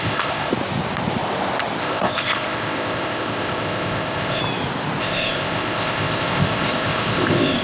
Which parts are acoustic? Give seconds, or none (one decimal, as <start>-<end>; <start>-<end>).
0.5-1.8; 4.4-5.0